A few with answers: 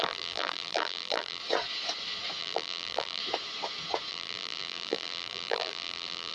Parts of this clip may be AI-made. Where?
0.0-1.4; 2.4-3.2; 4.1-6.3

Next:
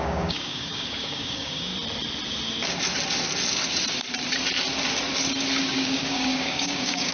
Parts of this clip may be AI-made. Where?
0.0-1.7; 5.6-7.1